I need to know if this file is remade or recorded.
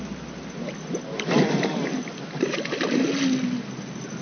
recorded